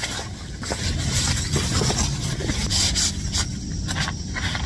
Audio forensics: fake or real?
real